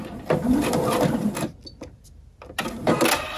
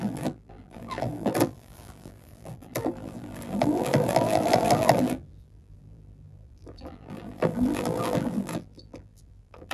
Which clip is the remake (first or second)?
second